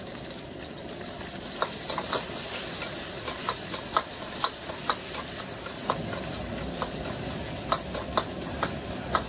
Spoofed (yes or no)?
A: no